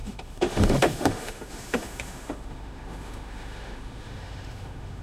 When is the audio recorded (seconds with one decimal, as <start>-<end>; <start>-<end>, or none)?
none